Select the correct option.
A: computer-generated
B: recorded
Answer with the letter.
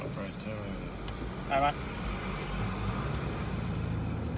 B